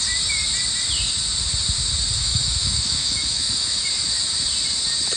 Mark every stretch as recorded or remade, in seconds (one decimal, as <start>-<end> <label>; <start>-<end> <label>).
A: 0.0-2.2 recorded; 2.2-3.9 remade; 3.9-5.2 recorded